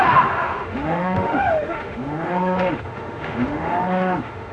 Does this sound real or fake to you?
fake